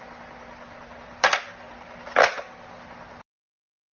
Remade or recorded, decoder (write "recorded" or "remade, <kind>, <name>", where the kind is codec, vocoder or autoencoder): recorded